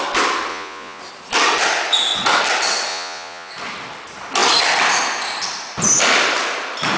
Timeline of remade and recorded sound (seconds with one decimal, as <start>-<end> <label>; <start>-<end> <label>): 0.0-0.5 recorded; 0.5-1.0 remade; 1.0-2.9 recorded; 2.9-3.5 remade; 3.5-7.0 recorded